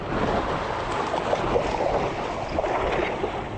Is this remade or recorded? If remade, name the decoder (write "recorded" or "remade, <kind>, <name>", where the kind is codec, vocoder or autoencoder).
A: recorded